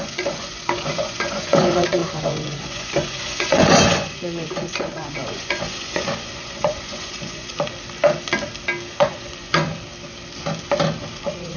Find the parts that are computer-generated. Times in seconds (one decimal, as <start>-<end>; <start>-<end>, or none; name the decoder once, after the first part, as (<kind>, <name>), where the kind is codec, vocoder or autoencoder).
0.0-7.5 (vocoder, Vocos); 8.9-9.7; 11.1-11.6